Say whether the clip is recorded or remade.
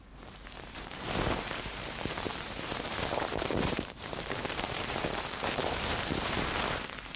remade